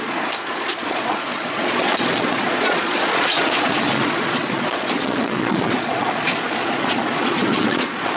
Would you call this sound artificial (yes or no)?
yes